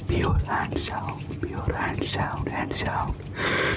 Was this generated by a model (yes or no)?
no